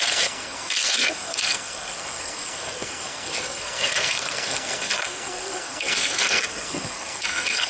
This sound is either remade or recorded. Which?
remade